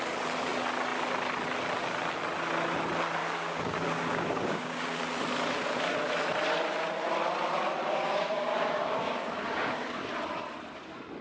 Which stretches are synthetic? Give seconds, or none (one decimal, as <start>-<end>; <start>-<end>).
3.2-5.0; 7.8-10.0